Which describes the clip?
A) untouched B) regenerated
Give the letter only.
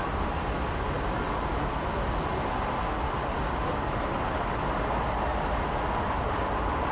A